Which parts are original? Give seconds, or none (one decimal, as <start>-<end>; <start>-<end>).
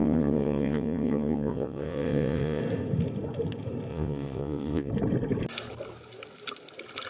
2.6-3.9; 4.9-7.1